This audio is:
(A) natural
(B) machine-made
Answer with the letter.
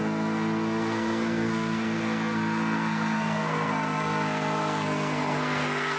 B